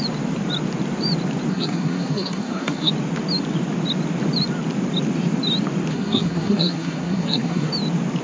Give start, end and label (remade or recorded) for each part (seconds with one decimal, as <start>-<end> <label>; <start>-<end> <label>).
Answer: 0.0-1.5 recorded; 1.5-2.9 remade; 2.9-5.9 recorded; 5.9-7.7 remade; 7.7-8.2 recorded